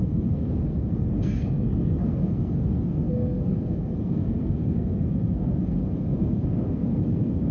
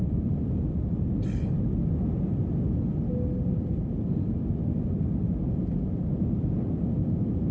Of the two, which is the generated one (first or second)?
first